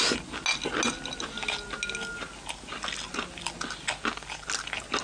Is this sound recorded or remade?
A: recorded